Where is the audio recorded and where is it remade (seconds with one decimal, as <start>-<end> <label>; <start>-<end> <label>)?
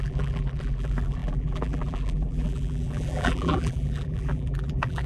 0.0-5.1 remade